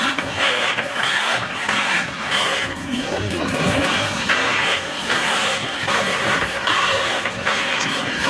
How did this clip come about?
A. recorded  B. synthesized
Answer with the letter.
B